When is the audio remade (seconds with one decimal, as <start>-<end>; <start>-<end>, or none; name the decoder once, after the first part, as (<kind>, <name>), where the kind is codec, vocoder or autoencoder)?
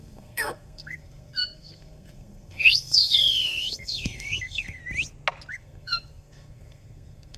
0.0-4.8 (codec, SNAC); 5.5-7.4